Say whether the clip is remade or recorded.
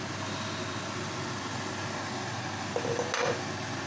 recorded